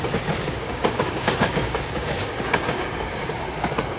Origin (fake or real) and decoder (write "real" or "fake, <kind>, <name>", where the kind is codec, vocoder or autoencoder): fake, codec, DAC